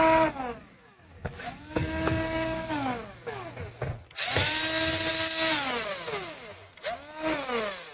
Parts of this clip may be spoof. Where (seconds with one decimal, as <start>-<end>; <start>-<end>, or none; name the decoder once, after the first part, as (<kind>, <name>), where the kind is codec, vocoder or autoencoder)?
0.6-3.5 (codec, DAC)